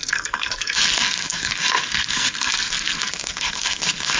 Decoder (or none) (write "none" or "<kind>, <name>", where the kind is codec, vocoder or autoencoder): codec, SNAC